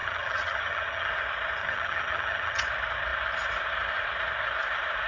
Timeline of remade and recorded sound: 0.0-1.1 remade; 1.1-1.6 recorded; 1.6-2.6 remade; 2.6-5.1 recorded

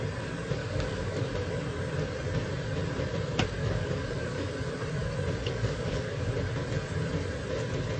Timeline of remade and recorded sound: 0.0-0.6 recorded; 0.6-1.3 remade; 1.3-3.6 recorded; 3.6-4.5 remade; 4.5-5.4 recorded; 5.4-6.3 remade; 6.3-8.0 recorded

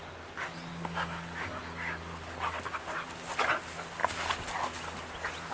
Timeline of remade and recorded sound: 0.0-5.5 recorded

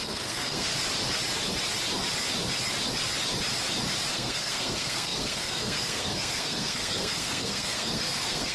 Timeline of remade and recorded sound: 0.0-0.7 remade; 0.7-4.1 recorded; 4.1-8.5 remade

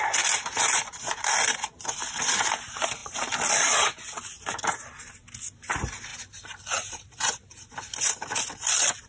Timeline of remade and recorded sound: 0.0-6.1 recorded; 6.1-8.2 remade; 8.2-9.1 recorded

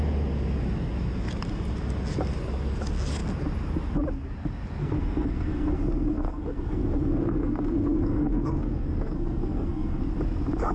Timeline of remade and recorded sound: 0.0-4.8 recorded; 4.8-10.0 remade; 10.0-10.7 recorded

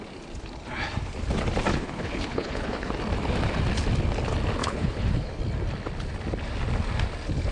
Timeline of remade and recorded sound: 0.0-1.7 recorded; 1.7-2.9 remade; 2.9-4.6 recorded; 4.6-5.4 remade; 5.4-7.5 recorded